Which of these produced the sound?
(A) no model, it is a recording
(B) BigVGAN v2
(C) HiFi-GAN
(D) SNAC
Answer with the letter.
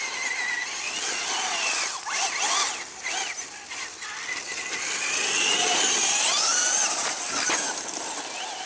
A